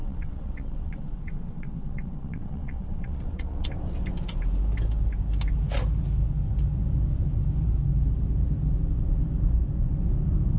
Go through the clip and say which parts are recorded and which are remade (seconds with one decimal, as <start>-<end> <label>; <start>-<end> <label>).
0.0-3.7 remade; 3.7-10.6 recorded